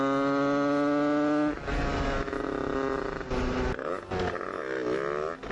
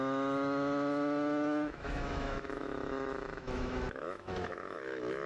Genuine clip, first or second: first